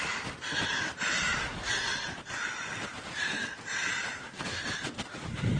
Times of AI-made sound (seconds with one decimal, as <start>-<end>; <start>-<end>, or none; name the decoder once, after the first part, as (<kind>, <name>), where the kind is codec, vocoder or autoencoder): 0.0-1.9 (vocoder, BigVGAN v2); 3.9-5.6